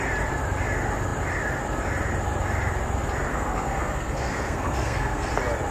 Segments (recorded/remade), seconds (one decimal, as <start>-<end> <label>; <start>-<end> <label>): 0.0-3.3 recorded; 3.3-5.3 remade; 5.3-5.7 recorded

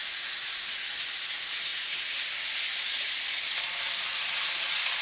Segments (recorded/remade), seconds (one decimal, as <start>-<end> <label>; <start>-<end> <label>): 0.0-5.0 recorded

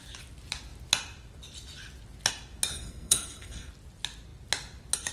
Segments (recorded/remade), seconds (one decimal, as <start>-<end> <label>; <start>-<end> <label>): 0.0-2.7 recorded; 2.7-3.7 remade; 3.7-5.1 recorded

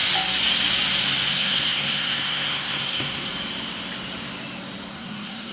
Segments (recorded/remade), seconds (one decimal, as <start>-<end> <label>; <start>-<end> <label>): 0.0-1.3 recorded; 1.3-3.3 remade; 3.3-4.9 recorded; 4.9-5.5 remade

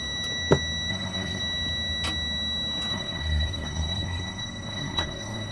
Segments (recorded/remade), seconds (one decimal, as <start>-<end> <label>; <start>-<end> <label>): 0.0-0.9 recorded; 0.9-1.4 remade; 1.4-2.9 recorded; 2.9-5.5 remade

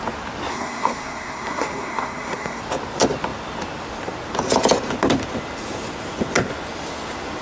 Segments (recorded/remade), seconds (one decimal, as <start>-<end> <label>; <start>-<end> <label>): 0.0-0.5 recorded; 0.5-2.6 remade; 2.6-7.4 recorded